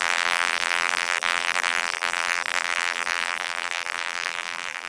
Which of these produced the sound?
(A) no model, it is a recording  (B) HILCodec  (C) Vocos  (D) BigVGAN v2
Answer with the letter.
D